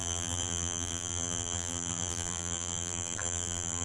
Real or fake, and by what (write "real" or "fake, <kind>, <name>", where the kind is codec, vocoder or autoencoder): fake, vocoder, BigVGAN v2